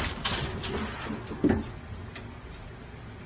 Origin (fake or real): real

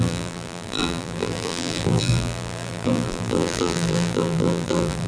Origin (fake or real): fake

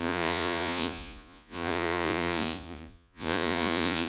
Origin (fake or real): fake